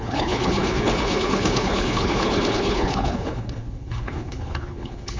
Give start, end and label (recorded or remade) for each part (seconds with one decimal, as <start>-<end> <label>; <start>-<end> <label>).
0.0-5.2 remade